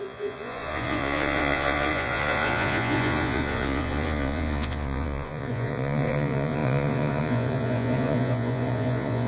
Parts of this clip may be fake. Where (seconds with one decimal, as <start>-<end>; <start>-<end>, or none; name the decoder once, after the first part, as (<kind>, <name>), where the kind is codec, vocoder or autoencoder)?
0.0-9.3 (vocoder, Vocos)